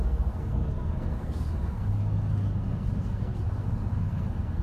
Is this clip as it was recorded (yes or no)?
no